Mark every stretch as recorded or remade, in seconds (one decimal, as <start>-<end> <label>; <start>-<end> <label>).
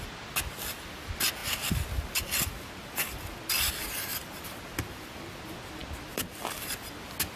0.0-7.4 recorded